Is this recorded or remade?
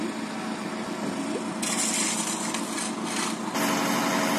recorded